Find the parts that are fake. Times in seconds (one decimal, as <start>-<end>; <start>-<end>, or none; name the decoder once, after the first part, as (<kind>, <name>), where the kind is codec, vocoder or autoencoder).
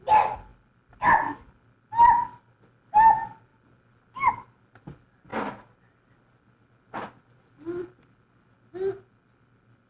0.5-1.4 (vocoder, BigVGAN v2); 3.5-4.3